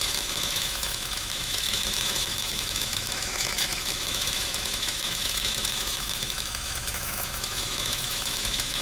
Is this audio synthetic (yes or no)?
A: yes